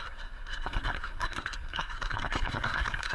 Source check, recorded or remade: remade